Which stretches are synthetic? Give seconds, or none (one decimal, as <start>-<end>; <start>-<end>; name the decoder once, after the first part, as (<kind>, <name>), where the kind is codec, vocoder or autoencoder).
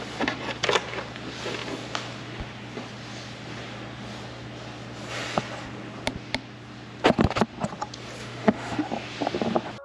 8.2-8.8 (autoencoder, DAC-VAE)